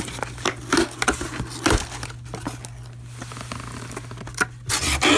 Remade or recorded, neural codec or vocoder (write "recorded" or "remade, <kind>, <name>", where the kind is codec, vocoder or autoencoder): recorded